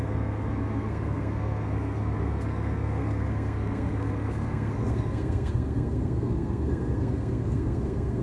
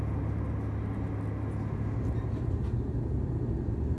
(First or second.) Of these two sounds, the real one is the second